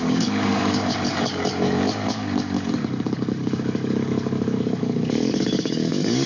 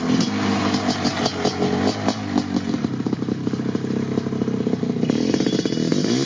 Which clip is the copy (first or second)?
first